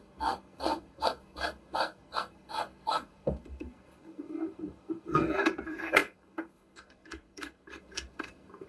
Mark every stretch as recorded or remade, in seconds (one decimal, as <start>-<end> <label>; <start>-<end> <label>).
0.0-8.7 remade